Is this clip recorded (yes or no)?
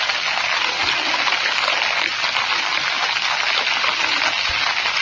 yes